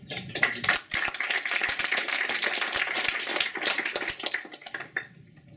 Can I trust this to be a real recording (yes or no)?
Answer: yes